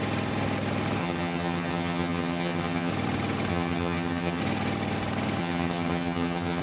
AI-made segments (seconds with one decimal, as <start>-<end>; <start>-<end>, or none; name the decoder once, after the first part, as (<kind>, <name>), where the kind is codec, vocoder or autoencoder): 1.0-2.9 (vocoder, HiFi-GAN); 3.5-4.4; 5.4-6.6